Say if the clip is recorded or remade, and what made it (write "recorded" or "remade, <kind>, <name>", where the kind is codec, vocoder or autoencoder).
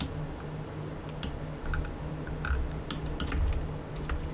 recorded